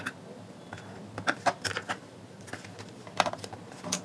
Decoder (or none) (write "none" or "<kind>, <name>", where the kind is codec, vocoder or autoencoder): none